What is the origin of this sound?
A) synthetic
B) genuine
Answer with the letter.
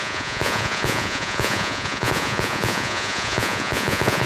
A